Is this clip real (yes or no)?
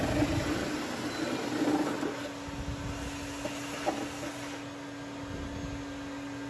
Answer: yes